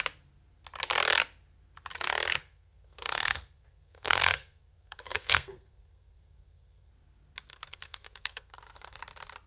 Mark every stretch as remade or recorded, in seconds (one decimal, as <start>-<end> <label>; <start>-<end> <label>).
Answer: 0.0-2.4 recorded; 2.4-6.9 remade; 6.9-7.5 recorded; 7.5-9.0 remade; 9.0-9.5 recorded